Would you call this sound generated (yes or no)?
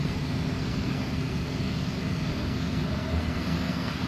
yes